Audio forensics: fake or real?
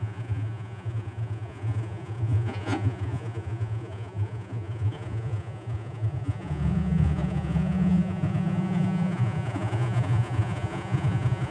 fake